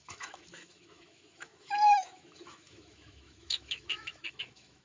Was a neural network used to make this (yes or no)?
yes